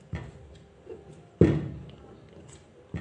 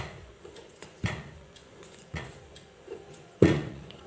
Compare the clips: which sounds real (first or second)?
first